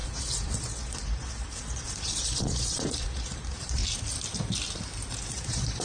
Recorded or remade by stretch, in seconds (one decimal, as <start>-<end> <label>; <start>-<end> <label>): 0.0-3.8 remade; 3.8-5.3 recorded; 5.3-5.8 remade